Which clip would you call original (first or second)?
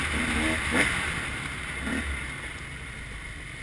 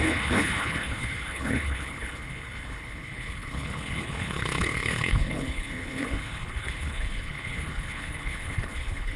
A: first